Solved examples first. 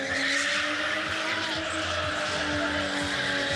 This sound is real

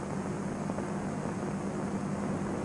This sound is real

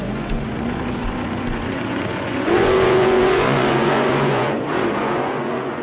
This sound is fake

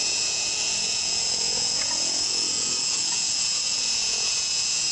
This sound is fake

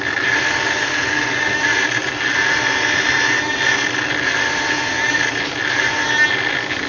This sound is real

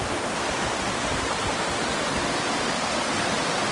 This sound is real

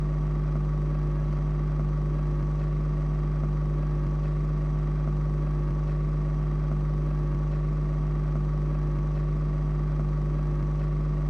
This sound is real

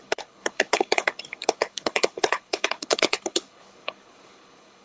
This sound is fake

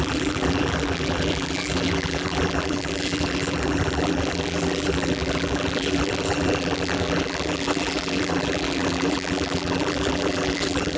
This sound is fake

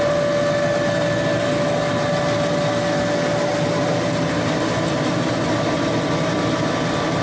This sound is real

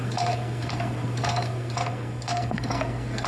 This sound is fake